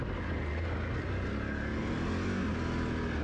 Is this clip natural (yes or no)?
yes